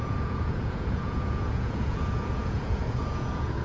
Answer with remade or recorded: remade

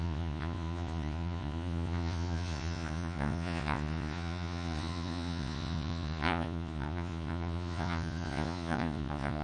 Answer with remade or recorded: remade